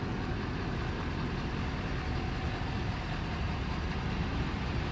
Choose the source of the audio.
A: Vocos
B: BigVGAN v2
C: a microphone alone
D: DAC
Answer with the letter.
C